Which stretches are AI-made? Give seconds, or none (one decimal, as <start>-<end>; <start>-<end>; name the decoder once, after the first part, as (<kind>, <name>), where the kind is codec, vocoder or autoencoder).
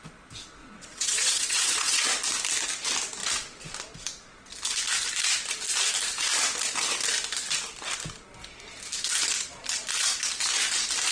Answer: 0.6-2.0 (vocoder, WaveNeXt)